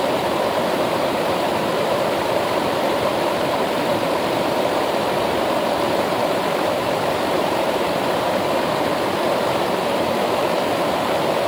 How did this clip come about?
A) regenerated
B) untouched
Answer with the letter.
A